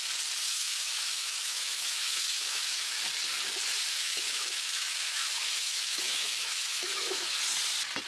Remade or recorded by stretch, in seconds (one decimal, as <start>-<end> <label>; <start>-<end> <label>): 0.0-0.4 recorded; 0.4-3.0 remade; 3.0-3.9 recorded; 3.9-7.4 remade; 7.4-8.1 recorded